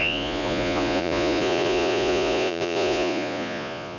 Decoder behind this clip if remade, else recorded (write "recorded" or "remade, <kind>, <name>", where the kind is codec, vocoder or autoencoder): remade, vocoder, Vocos